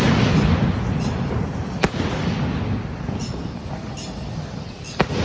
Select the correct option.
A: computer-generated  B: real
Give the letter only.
B